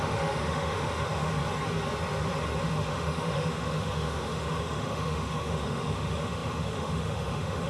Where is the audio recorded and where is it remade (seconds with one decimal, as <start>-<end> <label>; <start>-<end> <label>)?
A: 0.0-1.4 remade; 1.4-2.6 recorded; 2.6-7.7 remade